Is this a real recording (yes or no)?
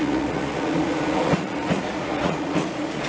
no